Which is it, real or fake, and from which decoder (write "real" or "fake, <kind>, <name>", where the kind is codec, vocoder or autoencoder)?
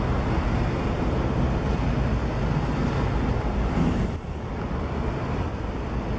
real